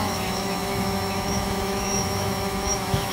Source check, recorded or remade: remade